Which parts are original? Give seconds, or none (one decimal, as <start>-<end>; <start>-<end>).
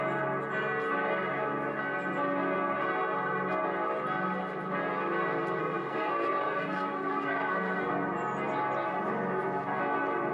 0.0-5.6; 7.9-10.3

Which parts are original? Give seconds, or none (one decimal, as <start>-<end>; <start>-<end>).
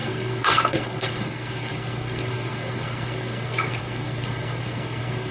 none